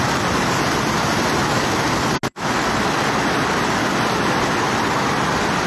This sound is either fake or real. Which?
real